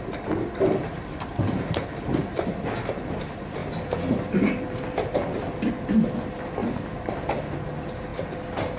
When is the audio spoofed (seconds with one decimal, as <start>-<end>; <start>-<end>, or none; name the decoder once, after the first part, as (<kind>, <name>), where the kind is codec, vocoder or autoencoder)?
none